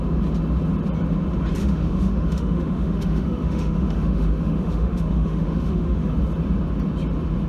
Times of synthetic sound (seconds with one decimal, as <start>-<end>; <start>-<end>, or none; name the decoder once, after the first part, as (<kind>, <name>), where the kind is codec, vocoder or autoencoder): 1.6-6.1 (autoencoder, DAC-VAE)